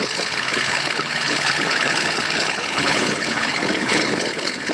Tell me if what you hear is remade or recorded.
remade